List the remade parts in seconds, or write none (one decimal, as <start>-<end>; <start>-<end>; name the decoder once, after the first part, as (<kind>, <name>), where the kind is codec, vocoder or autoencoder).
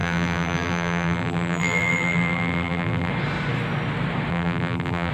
0.0-3.1 (vocoder, BigVGAN v2); 4.3-5.1